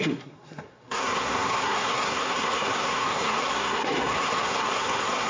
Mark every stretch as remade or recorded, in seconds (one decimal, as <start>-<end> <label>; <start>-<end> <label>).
0.0-5.3 remade